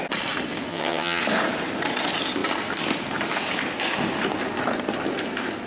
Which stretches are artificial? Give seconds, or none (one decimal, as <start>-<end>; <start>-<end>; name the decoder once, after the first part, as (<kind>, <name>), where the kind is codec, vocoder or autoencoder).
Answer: 0.7-1.2 (vocoder, HiFi-GAN)